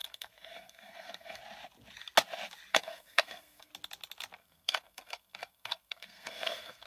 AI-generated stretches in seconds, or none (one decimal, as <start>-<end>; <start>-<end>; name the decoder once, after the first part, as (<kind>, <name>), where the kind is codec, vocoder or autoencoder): 0.0-1.4 (codec, SNAC); 2.7-3.7; 4.4-6.9